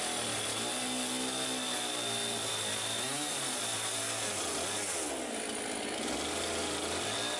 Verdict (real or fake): real